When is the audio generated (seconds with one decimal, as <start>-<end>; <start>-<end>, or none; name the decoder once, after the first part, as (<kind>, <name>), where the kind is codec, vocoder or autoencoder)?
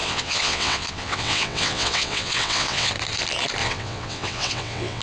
0.0-2.9 (vocoder, WaveNeXt); 3.6-5.0